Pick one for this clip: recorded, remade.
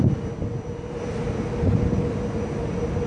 recorded